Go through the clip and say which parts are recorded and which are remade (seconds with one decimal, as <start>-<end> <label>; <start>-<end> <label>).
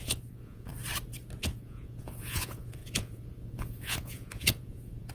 0.0-0.7 remade; 0.7-1.4 recorded; 1.4-5.1 remade